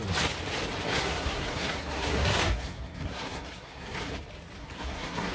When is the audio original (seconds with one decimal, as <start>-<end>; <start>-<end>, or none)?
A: 0.0-0.9; 4.1-4.6